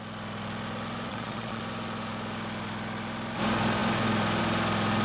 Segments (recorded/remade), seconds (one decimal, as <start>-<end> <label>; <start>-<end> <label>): 0.0-1.1 recorded; 1.1-1.6 remade; 1.6-5.0 recorded